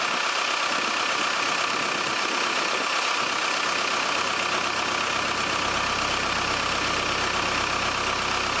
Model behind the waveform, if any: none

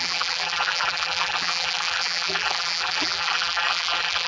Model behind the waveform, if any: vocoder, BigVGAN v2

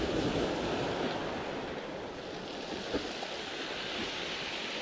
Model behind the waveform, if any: none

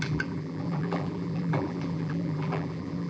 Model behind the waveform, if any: vocoder, BigVGAN v2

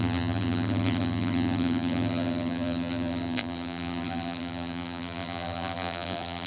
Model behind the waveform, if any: vocoder, BigVGAN v2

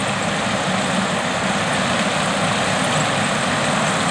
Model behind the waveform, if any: none